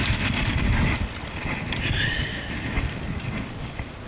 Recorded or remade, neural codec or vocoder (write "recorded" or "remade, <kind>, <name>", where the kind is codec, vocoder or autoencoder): recorded